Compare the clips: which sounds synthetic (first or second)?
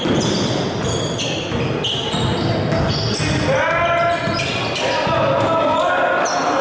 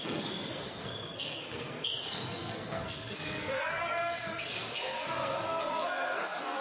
second